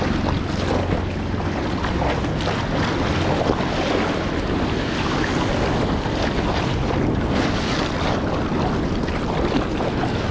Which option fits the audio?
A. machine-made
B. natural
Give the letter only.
B